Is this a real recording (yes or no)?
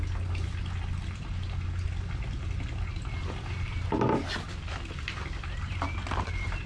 yes